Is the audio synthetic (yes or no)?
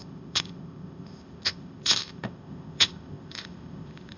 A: yes